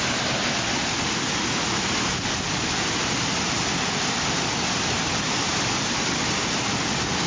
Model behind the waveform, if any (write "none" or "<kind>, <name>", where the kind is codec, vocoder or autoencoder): none